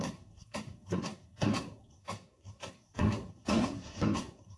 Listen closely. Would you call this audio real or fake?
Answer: fake